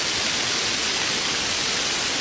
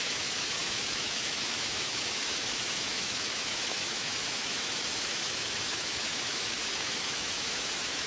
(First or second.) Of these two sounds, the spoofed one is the second